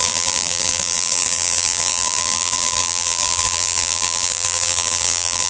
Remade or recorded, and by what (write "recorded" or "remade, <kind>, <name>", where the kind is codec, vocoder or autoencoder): remade, vocoder, BigVGAN v2